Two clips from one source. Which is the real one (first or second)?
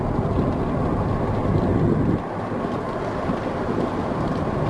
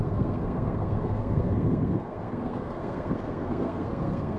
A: first